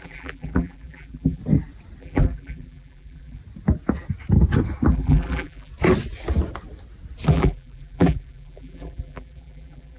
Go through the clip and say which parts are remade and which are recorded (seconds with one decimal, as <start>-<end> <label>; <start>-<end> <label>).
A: 0.0-1.4 remade; 1.4-2.0 recorded; 2.0-3.4 remade; 3.4-4.9 recorded; 4.9-5.7 remade; 5.7-7.3 recorded; 7.3-10.0 remade